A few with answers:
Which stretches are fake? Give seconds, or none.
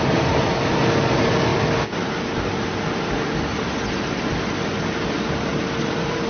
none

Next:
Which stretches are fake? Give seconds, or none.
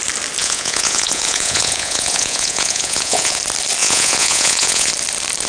0.4-3.4; 3.8-4.9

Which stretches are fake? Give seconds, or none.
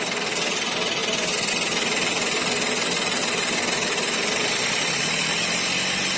none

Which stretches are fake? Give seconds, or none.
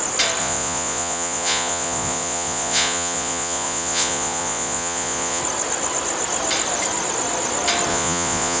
0.4-5.4; 7.9-8.6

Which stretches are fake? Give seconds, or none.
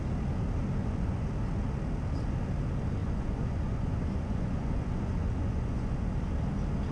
0.8-1.3; 3.0-6.1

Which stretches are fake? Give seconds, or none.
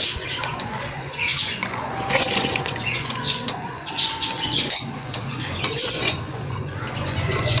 0.0-7.6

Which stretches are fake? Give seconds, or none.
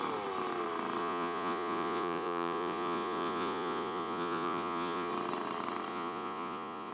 1.0-5.1; 5.9-6.9